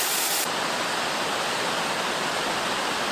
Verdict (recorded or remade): recorded